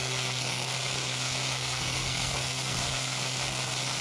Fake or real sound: fake